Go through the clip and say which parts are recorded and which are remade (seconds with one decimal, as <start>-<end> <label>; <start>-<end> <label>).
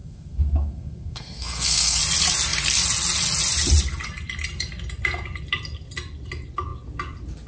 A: 0.0-2.0 remade; 2.0-7.5 recorded